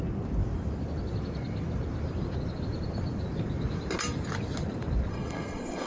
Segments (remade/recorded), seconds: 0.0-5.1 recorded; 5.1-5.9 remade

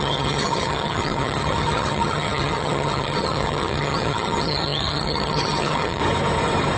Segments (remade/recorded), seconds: 0.0-6.0 remade; 6.0-6.8 recorded

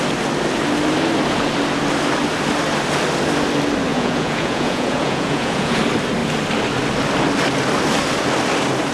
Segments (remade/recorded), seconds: 0.0-3.9 recorded; 3.9-5.8 remade; 5.8-8.9 recorded

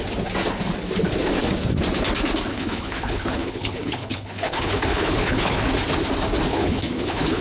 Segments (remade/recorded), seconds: 0.0-2.5 recorded; 2.5-5.6 remade; 5.6-6.5 recorded; 6.5-7.4 remade

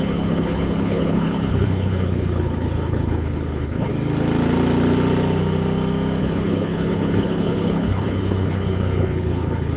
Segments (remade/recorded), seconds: 0.0-3.9 remade; 3.9-6.2 recorded; 6.2-9.8 remade

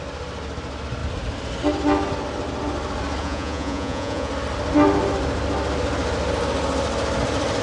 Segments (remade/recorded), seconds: 0.0-3.2 recorded; 3.2-4.3 remade; 4.3-7.6 recorded